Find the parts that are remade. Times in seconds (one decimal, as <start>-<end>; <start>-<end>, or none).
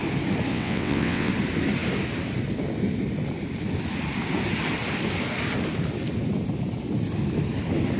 0.5-1.3